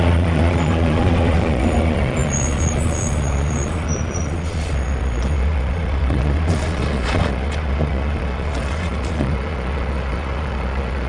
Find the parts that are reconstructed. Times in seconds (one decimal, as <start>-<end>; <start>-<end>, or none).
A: 0.0-11.1